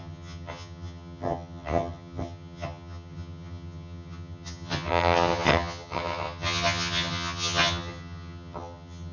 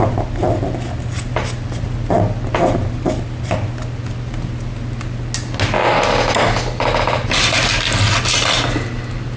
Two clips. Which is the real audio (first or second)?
second